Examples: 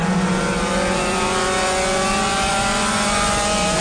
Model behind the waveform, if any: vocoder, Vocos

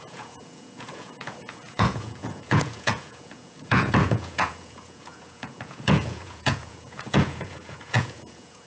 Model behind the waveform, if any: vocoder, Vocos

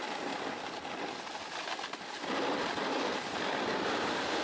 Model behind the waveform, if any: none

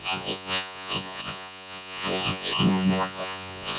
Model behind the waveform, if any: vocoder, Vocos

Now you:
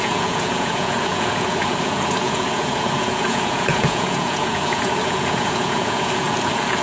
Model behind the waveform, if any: vocoder, Vocos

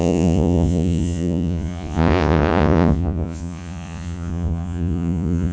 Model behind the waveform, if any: vocoder, Vocos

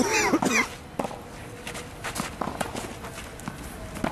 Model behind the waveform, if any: none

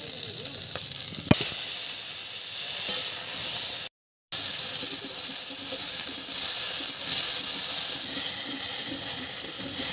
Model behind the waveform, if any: none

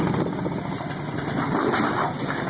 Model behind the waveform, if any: none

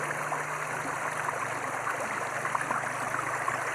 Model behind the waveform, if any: none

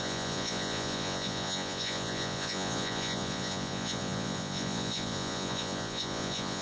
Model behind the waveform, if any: vocoder, Vocos